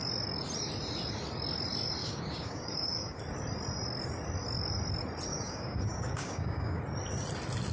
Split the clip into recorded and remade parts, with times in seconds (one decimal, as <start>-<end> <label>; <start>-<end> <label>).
0.0-2.0 recorded; 2.0-3.2 remade; 3.2-5.3 recorded; 5.3-6.8 remade; 6.8-7.7 recorded